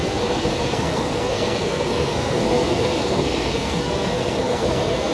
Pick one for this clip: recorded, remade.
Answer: remade